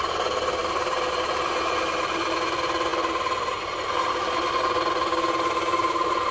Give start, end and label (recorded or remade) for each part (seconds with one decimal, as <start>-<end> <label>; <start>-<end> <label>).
0.0-6.3 recorded